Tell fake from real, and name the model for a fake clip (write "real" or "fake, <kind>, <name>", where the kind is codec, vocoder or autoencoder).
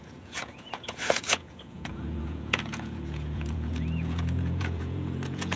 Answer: fake, vocoder, Vocos